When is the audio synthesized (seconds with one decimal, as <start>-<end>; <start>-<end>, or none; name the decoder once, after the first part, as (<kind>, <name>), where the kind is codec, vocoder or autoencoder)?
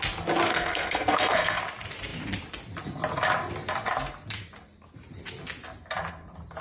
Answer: 0.5-1.6 (codec, SNAC)